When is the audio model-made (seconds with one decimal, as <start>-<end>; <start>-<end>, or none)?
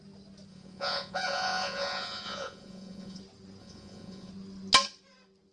0.5-3.2; 3.6-4.3